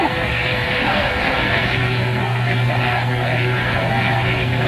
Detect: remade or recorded remade